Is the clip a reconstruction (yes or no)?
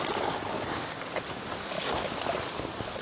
no